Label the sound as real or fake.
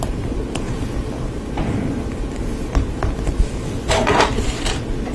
real